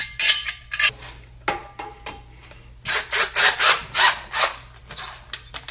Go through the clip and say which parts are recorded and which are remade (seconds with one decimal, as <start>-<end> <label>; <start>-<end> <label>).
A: 0.0-5.7 recorded